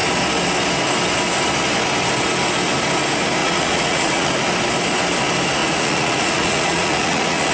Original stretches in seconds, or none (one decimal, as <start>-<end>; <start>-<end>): 0.0-3.4; 4.3-5.6